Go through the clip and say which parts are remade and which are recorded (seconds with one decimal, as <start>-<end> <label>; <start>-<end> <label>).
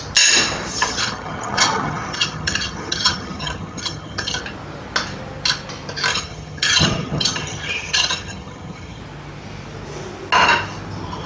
0.0-0.7 recorded; 0.7-4.4 remade; 4.4-6.1 recorded; 6.1-9.0 remade; 9.0-11.3 recorded